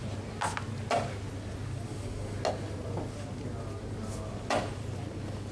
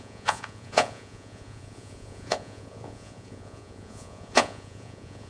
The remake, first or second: second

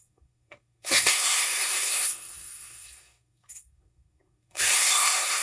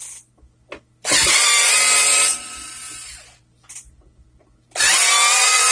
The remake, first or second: first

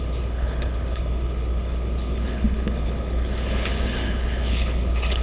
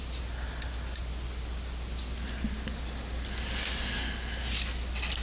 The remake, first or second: first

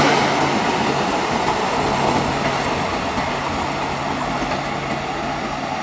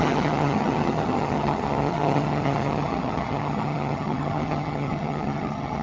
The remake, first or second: second